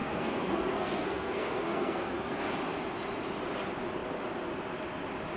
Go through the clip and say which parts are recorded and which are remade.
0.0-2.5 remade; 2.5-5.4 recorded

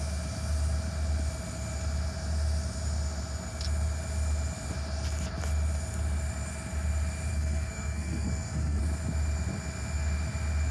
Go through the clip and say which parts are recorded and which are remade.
0.0-7.3 recorded; 7.3-8.8 remade; 8.8-10.7 recorded

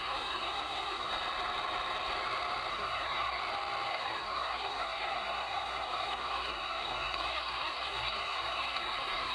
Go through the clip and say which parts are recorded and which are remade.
0.0-1.1 remade; 1.1-2.7 recorded; 2.7-3.4 remade; 3.4-3.9 recorded; 3.9-9.3 remade